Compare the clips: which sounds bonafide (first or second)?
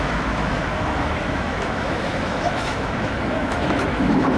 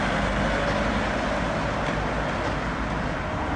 second